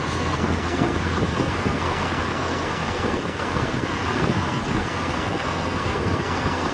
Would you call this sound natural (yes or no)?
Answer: no